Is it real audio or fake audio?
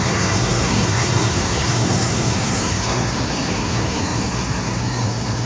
fake